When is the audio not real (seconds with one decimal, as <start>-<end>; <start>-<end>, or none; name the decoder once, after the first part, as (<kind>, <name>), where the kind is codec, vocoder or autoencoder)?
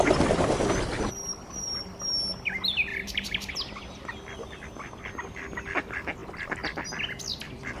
2.9-3.5 (vocoder, BigVGAN v2)